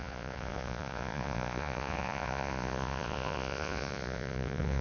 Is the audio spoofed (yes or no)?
yes